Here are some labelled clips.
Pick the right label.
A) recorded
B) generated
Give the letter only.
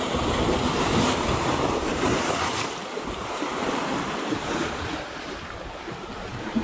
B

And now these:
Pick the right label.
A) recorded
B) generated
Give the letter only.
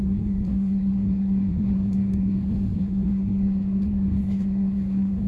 B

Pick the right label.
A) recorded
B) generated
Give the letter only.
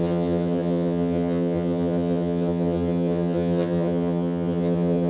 B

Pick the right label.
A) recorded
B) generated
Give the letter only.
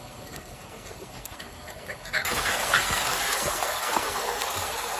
B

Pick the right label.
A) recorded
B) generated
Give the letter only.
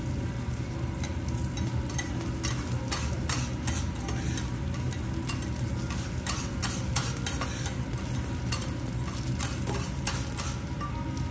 A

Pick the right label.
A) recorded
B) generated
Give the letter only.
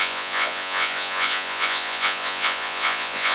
B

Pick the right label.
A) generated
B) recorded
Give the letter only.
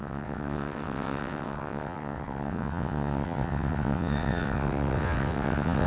A